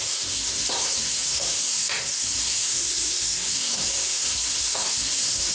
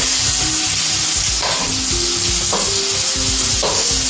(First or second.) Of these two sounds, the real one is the second